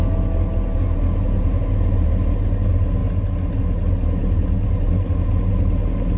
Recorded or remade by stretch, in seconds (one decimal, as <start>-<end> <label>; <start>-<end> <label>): 0.0-6.2 recorded